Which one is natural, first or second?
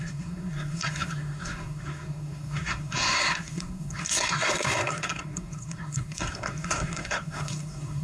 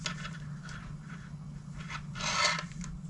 second